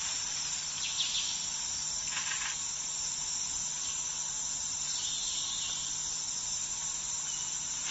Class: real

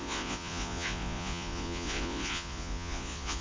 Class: fake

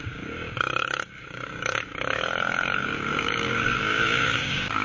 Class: fake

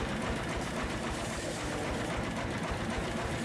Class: real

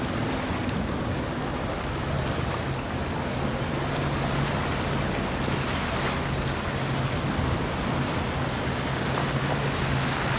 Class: real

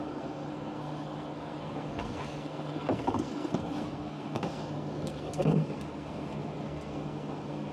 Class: fake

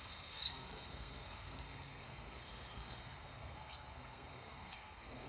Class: fake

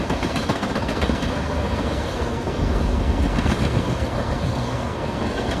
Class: fake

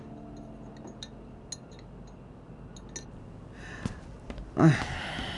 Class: real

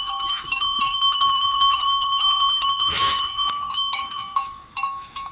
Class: fake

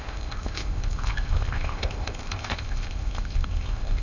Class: fake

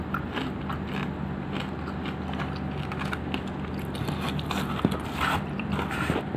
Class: real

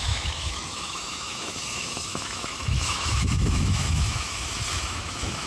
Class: fake